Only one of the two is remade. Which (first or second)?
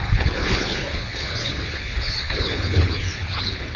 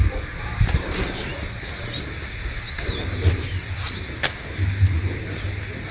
first